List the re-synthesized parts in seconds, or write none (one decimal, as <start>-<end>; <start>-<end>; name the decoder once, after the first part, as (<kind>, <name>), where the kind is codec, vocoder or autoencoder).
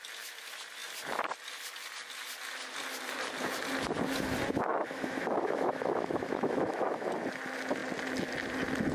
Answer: 4.7-7.1 (autoencoder, DAC-VAE)